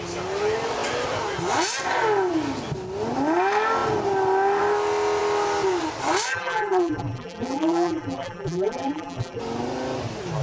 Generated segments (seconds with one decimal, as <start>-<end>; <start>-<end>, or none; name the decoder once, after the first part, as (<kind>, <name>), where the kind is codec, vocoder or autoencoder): 6.3-9.4 (vocoder, BigVGAN v2)